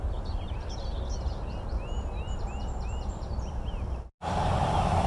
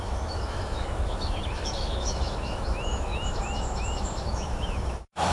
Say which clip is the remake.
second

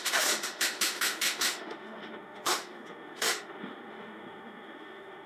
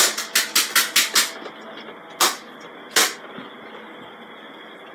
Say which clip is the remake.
first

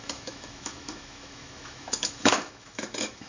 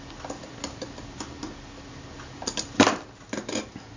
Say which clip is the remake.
first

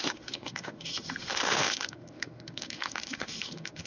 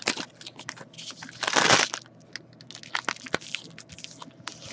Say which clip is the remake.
first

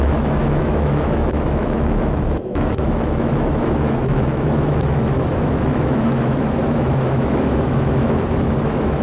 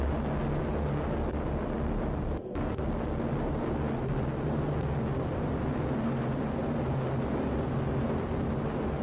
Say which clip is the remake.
first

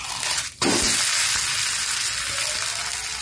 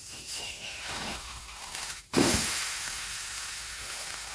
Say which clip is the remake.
second